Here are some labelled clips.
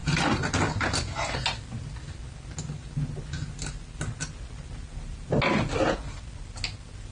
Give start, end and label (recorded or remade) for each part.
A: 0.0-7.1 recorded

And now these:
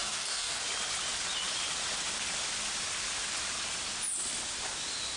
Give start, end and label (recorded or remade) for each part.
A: 0.0-0.6 remade; 0.6-5.2 recorded

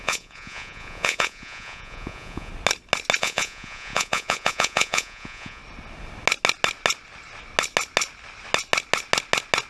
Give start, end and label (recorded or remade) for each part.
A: 0.0-2.5 remade; 2.5-3.2 recorded; 3.2-5.6 remade; 5.6-9.7 recorded

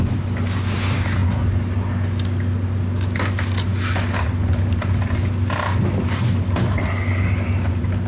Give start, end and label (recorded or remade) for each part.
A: 0.0-8.1 recorded